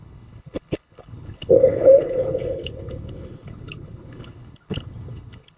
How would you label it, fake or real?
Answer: fake